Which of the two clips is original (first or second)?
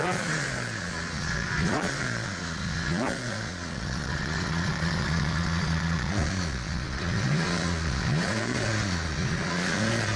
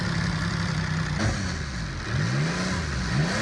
second